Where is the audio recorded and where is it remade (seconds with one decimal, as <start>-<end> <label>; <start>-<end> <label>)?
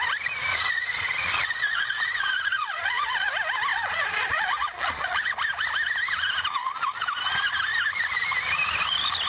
0.0-0.5 recorded; 0.5-3.3 remade; 3.3-3.7 recorded; 3.7-5.3 remade; 5.3-9.3 recorded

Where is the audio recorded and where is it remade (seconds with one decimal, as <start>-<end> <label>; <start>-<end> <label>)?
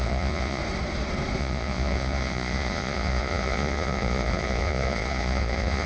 0.0-0.6 remade; 0.6-1.4 recorded; 1.4-5.9 remade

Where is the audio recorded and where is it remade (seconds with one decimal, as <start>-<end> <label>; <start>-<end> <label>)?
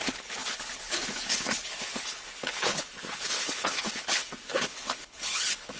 0.0-5.8 remade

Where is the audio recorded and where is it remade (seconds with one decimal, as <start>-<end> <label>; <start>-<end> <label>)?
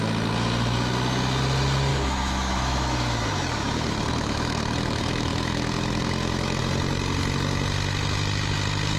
0.0-1.9 recorded; 1.9-6.6 remade; 6.6-9.0 recorded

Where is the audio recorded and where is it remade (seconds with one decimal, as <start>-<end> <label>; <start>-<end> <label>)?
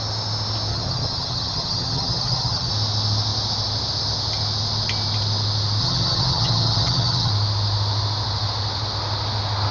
0.0-0.7 recorded; 0.7-2.7 remade; 2.7-5.8 recorded; 5.8-7.3 remade; 7.3-9.7 recorded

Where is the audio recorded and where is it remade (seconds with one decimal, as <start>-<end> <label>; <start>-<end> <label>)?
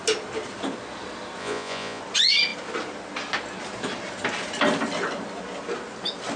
0.0-1.4 recorded; 1.4-2.0 remade; 2.0-6.4 recorded